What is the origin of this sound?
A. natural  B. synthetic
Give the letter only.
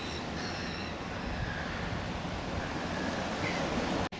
B